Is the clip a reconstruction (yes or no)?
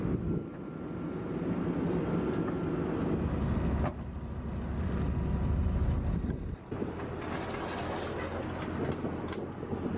no